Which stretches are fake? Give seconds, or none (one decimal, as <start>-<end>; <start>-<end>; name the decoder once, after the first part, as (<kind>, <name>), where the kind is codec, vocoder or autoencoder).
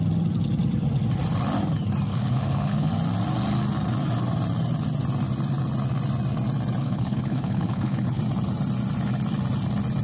2.1-2.9 (codec, HILCodec); 6.8-8.2